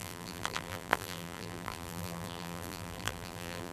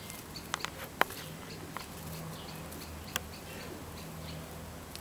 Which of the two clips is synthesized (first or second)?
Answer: first